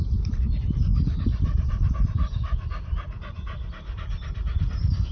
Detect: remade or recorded recorded